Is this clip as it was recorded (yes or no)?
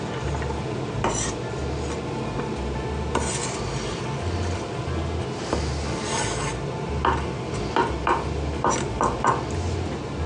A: yes